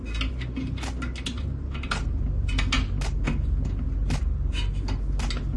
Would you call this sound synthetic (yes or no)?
no